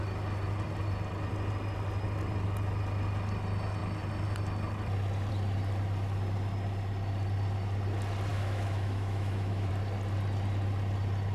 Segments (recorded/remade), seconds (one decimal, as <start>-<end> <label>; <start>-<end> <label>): 0.0-8.3 recorded; 8.3-9.7 remade; 9.7-11.3 recorded